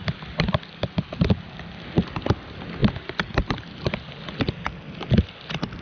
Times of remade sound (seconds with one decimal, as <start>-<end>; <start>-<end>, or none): none